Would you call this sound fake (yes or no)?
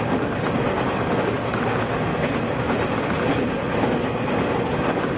no